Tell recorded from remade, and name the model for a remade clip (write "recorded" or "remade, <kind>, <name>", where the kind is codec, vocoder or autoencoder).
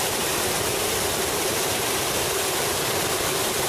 remade, vocoder, BigVGAN v2